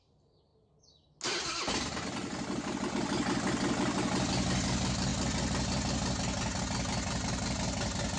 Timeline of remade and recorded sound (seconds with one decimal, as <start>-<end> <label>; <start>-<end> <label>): 0.0-8.2 recorded